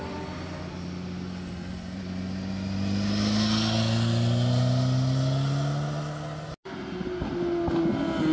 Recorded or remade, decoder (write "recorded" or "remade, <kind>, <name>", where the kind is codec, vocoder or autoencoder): recorded